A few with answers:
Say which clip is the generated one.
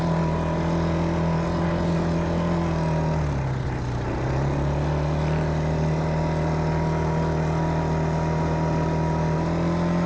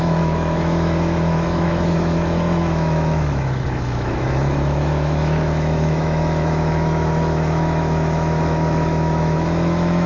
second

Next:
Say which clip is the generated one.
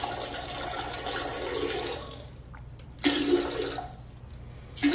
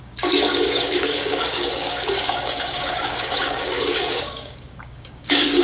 second